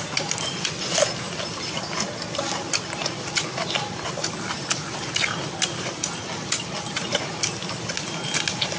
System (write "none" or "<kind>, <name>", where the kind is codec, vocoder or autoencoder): none